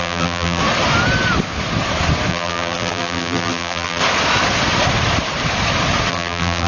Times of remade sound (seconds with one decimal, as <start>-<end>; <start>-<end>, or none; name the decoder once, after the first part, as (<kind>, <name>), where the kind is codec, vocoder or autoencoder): 0.0-0.6 (vocoder, BigVGAN v2); 2.3-4.0; 6.1-6.7